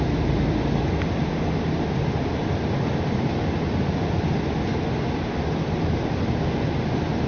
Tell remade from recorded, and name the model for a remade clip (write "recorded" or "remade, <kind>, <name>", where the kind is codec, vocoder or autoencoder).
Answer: recorded